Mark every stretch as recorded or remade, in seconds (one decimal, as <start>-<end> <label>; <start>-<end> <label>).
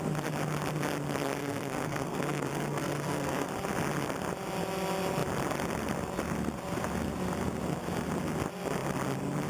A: 0.0-1.4 recorded; 1.4-3.5 remade; 3.5-9.5 recorded